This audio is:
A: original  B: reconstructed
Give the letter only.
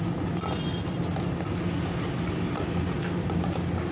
A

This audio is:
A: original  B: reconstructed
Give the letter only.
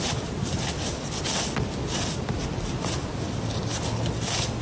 A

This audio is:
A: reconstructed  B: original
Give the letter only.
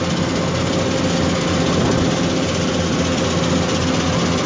B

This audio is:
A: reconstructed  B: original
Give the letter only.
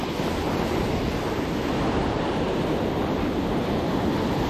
B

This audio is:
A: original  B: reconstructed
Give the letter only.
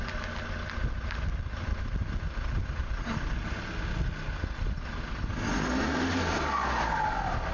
A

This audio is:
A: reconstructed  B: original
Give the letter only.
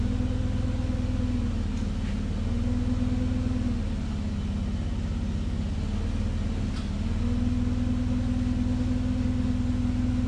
B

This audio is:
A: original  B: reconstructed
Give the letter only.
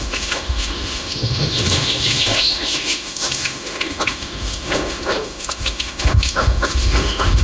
B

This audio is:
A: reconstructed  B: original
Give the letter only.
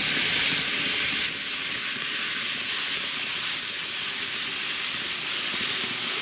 B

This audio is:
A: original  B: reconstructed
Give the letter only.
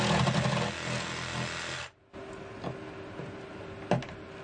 A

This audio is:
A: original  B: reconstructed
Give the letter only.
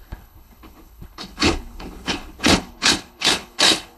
B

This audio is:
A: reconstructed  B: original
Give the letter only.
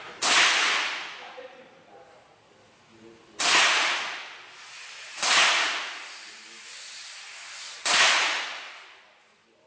B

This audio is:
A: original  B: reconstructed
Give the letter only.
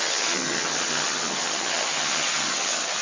B